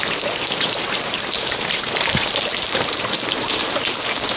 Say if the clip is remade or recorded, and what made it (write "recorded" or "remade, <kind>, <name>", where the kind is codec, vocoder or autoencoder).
remade, vocoder, BigVGAN v2